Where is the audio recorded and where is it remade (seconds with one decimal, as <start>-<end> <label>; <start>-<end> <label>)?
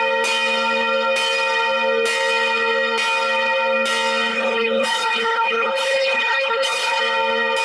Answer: 0.0-4.3 recorded; 4.3-7.0 remade; 7.0-7.6 recorded